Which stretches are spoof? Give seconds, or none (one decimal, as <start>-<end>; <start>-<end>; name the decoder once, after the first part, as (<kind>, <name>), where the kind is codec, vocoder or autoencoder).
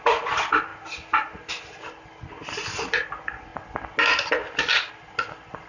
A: none